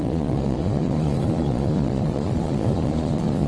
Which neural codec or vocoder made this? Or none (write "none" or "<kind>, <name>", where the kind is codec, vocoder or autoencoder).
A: vocoder, Vocos